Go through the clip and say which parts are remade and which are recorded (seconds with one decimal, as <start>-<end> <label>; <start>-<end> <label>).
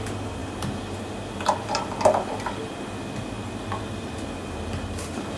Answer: 0.0-5.4 recorded